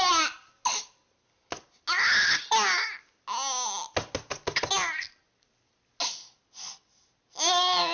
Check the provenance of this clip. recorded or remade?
recorded